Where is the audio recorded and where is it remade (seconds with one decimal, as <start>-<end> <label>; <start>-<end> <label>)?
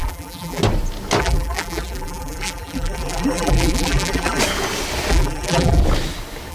0.0-0.6 remade; 0.6-1.2 recorded; 1.2-4.4 remade; 4.4-5.1 recorded; 5.1-5.8 remade; 5.8-6.5 recorded